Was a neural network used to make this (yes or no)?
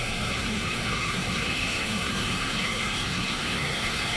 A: yes